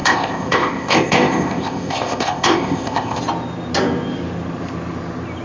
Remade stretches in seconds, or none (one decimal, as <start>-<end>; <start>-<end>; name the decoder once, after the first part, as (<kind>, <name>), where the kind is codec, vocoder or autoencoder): 0.0-3.2 (codec, ZipCodec)